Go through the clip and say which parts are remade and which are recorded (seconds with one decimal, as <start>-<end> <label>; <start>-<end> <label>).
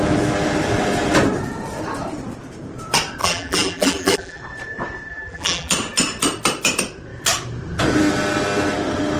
0.0-3.2 recorded; 3.2-4.4 remade; 4.4-5.1 recorded; 5.1-5.7 remade; 5.7-9.2 recorded